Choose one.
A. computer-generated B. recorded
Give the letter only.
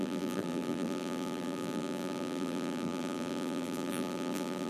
A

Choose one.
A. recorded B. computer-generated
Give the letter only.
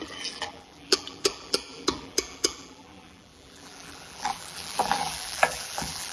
B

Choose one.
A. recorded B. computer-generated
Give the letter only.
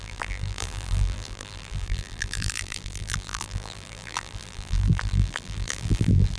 B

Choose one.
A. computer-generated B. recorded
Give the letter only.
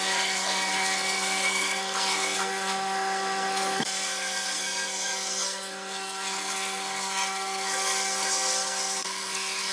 A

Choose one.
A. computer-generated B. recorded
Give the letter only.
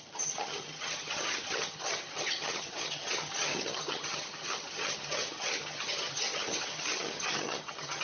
A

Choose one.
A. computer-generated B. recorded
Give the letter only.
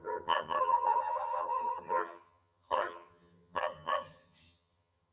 A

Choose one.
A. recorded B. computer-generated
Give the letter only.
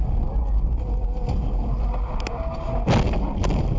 A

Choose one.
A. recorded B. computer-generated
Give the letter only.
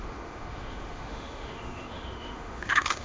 B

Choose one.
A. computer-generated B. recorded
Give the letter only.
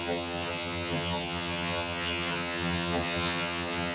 A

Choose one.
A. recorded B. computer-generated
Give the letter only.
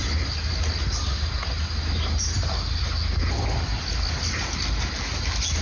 A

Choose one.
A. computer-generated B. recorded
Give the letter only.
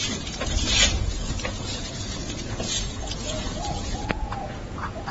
A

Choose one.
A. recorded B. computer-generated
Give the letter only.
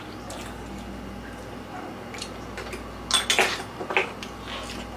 A